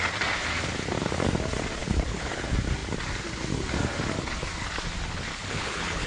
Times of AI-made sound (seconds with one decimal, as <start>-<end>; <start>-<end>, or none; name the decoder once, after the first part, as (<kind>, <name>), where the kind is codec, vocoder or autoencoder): 1.8-2.4 (codec, HILCodec); 5.3-6.1